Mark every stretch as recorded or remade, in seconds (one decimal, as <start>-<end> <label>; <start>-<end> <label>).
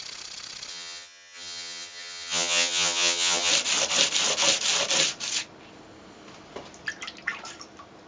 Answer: 0.0-0.7 recorded; 0.7-3.5 remade; 3.5-8.1 recorded